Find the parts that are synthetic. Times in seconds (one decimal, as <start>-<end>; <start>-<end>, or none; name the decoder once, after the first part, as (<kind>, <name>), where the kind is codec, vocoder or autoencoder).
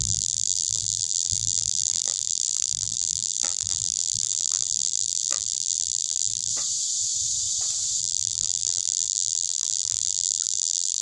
0.0-6.5 (vocoder, BigVGAN v2); 8.0-11.0